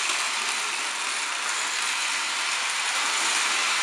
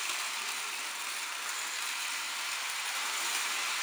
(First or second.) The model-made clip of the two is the second